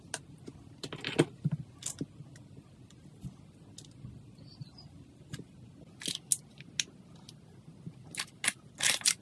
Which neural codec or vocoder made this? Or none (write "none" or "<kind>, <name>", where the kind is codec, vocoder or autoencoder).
none